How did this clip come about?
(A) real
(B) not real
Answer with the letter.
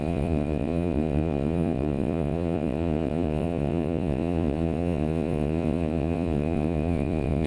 B